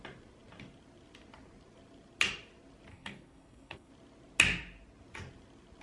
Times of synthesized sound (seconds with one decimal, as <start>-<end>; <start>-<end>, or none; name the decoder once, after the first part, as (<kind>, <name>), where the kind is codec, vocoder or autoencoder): 2.9-3.9 (codec, SNAC)